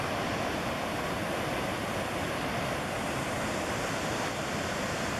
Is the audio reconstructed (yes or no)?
no